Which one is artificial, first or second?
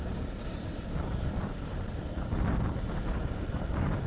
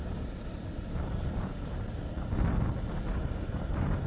first